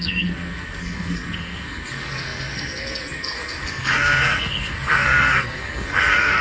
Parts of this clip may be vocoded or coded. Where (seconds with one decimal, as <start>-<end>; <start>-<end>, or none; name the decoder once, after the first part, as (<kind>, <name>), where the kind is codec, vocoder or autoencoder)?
0.0-6.4 (codec, SNAC)